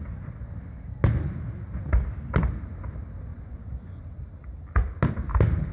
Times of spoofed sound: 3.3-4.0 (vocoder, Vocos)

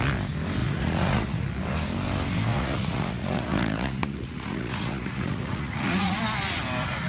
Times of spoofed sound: 0.6-1.4 (vocoder, Vocos); 2.5-6.2

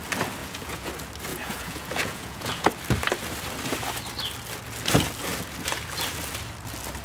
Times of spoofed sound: 0.4-0.9 (vocoder, Vocos); 1.3-2.7